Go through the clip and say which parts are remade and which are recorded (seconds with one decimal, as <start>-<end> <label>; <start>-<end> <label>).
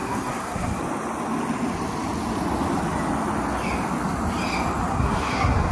0.0-0.8 remade; 0.8-4.9 recorded; 4.9-5.7 remade